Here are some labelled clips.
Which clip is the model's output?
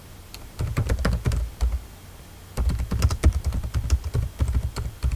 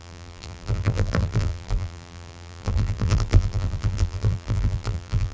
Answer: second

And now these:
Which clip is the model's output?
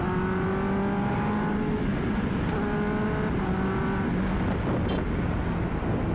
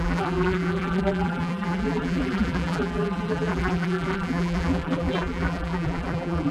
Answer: second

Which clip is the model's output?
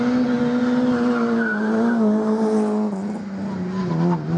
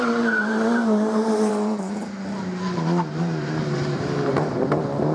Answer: second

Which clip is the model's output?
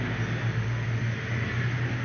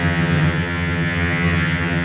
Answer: second